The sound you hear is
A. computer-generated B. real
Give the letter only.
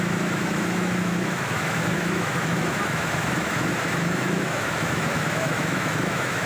A